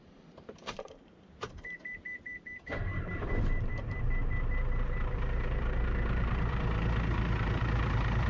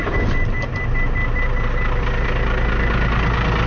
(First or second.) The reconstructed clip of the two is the first